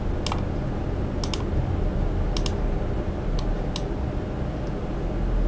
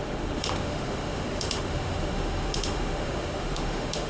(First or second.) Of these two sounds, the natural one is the first